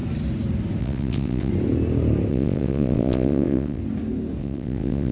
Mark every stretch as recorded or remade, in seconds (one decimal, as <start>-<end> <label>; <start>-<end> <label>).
0.0-0.8 recorded; 0.8-1.5 remade; 1.5-2.3 recorded; 2.3-3.8 remade; 3.8-4.4 recorded; 4.4-5.1 remade